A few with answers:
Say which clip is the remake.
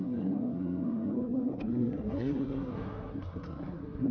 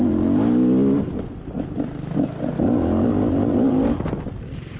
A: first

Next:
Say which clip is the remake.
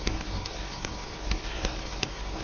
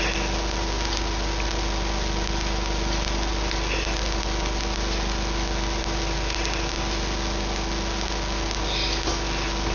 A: first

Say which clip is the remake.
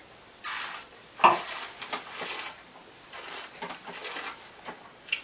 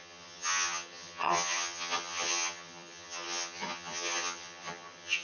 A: second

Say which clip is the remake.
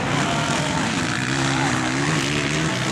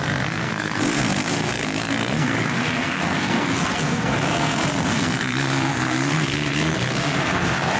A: second